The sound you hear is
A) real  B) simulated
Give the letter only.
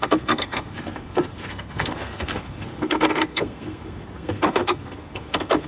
B